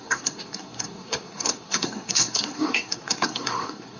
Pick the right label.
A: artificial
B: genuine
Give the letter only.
A